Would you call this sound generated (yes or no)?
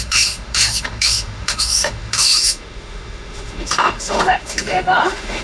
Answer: yes